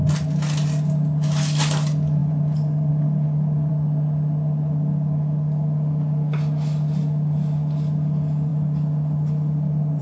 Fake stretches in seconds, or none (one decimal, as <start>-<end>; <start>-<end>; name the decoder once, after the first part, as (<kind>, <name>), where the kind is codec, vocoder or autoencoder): 2.2-3.7 (vocoder, BigVGAN v2); 8.5-10.0